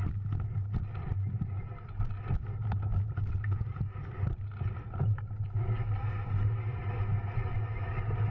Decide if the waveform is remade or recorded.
recorded